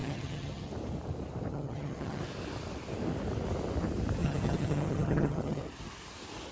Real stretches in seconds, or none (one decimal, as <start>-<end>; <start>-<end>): 0.7-1.5; 2.2-4.2; 5.6-6.5

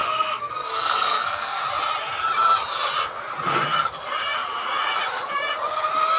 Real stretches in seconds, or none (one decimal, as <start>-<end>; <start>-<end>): 1.6-6.2

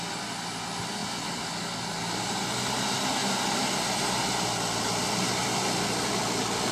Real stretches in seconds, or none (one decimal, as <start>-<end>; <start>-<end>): 0.0-6.7

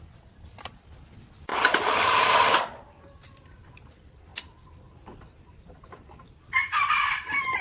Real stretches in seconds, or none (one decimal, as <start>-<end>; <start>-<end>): 0.0-1.5; 3.0-4.3; 4.8-7.6